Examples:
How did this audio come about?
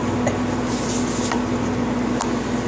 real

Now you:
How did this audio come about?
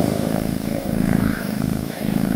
fake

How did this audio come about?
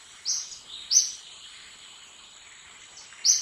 real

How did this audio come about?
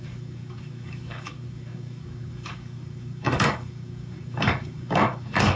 fake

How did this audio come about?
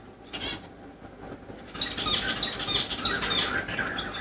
real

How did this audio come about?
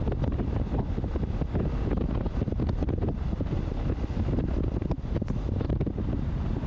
real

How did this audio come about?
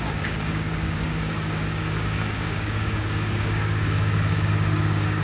fake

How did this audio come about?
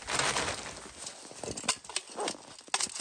real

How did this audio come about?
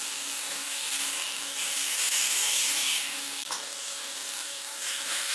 fake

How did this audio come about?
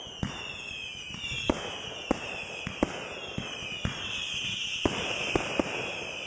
real